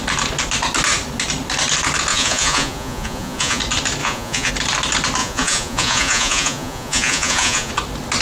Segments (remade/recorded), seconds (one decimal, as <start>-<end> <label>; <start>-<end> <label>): 0.0-2.1 recorded; 2.1-3.6 remade; 3.6-4.0 recorded; 4.0-4.5 remade; 4.5-5.2 recorded; 5.2-7.7 remade; 7.7-8.2 recorded